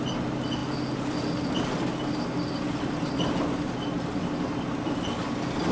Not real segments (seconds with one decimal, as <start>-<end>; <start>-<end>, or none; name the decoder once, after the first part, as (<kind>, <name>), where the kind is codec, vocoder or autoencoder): none